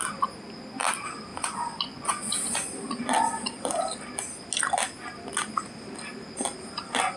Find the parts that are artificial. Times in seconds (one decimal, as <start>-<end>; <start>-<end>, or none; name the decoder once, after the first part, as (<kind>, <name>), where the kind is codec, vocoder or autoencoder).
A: 1.3-2.3 (vocoder, Vocos)